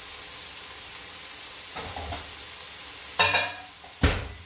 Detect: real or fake real